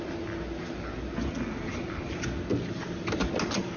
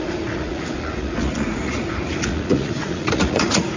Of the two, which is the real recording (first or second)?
first